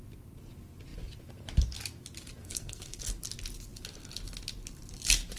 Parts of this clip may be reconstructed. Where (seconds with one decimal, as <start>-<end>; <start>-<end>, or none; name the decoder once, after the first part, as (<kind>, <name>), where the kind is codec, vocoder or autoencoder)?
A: 2.4-3.0 (codec, SNAC)